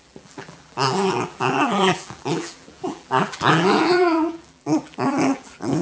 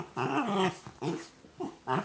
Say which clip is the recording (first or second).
second